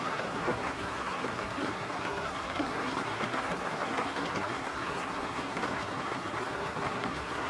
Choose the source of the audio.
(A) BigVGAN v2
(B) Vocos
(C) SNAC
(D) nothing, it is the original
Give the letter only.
C